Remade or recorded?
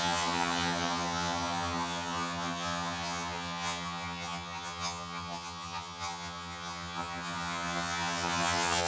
remade